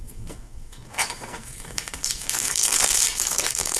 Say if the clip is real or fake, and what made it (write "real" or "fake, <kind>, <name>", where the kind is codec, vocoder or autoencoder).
fake, codec, SNAC